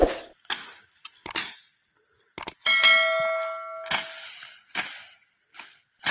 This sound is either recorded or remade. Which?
recorded